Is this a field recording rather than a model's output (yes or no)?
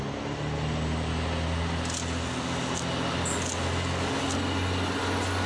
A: yes